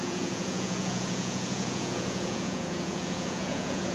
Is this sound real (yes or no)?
no